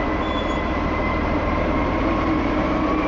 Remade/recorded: remade